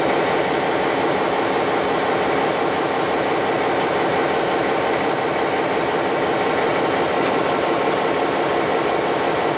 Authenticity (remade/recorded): recorded